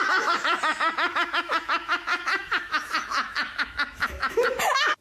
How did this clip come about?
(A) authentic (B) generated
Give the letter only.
B